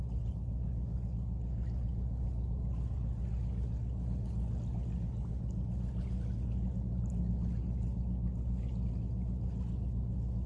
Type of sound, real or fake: real